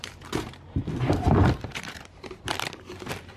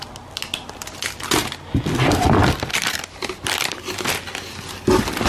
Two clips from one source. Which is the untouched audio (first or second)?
second